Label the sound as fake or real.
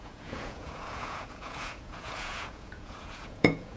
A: fake